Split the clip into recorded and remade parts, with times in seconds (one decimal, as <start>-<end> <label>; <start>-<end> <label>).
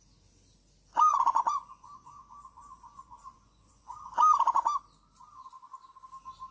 0.0-1.1 recorded; 1.1-4.1 remade; 4.1-6.5 recorded